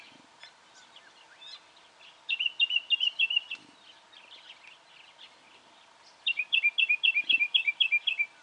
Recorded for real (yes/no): yes